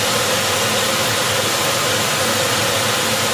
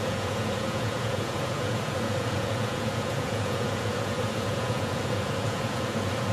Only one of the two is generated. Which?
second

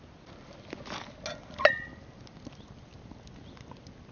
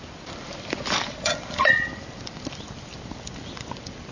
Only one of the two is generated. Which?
second